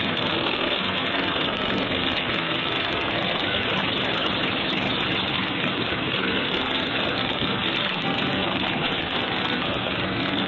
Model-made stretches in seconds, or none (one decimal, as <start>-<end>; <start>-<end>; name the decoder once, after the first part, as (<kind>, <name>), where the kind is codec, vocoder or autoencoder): 0.0-3.8 (codec, SNAC); 5.3-10.5